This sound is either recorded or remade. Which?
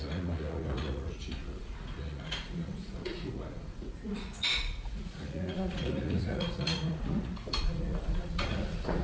remade